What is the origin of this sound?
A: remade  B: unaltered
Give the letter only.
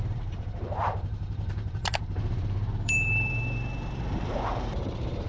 A